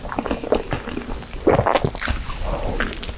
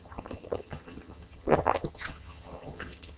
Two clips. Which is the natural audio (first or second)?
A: first